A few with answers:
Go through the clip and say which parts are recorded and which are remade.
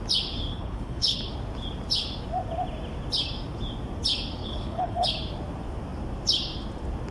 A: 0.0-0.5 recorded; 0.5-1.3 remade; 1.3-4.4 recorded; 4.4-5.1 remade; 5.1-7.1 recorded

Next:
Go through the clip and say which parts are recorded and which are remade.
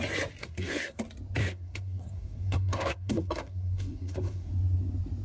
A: 0.0-0.4 recorded; 0.4-1.0 remade; 1.0-1.4 recorded; 1.4-4.5 remade; 4.5-5.2 recorded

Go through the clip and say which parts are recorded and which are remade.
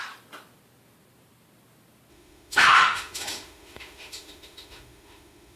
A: 0.0-2.1 recorded; 2.1-5.6 remade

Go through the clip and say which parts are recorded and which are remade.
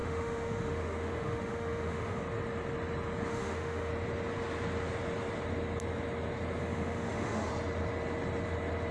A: 0.0-2.2 remade; 2.2-3.3 recorded; 3.3-3.9 remade; 3.9-6.6 recorded; 6.6-7.5 remade; 7.5-8.9 recorded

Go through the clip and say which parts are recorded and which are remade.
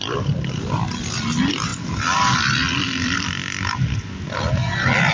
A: 0.0-5.1 recorded